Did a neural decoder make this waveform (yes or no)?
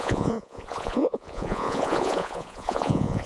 yes